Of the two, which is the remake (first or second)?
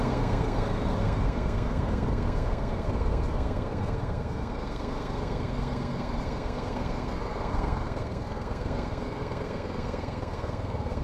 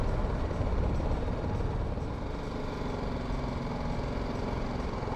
first